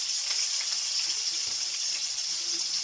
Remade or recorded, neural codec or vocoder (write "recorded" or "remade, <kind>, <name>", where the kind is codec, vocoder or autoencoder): remade, vocoder, Vocos